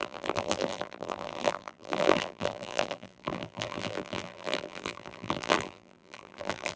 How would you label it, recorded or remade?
remade